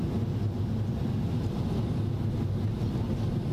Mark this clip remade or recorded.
recorded